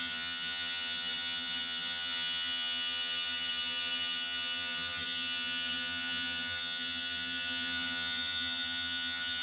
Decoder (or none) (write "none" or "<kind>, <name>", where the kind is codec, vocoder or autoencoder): vocoder, HiFi-GAN